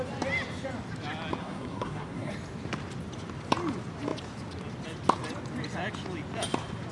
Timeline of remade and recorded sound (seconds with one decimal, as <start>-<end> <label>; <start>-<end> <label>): 0.0-1.4 recorded; 1.4-2.3 remade; 2.3-6.9 recorded